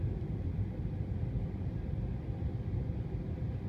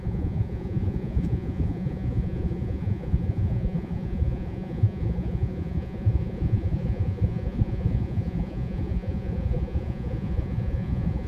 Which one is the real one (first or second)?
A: first